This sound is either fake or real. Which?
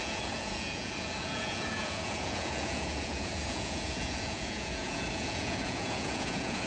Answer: fake